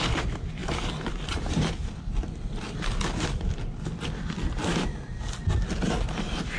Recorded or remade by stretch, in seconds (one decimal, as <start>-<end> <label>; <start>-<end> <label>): 0.0-6.6 recorded